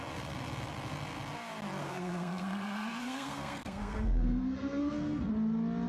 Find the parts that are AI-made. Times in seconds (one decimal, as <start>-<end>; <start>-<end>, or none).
1.8-5.3